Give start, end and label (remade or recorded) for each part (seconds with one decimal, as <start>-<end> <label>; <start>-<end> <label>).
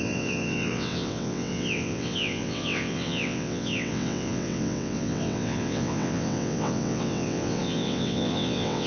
0.0-8.9 remade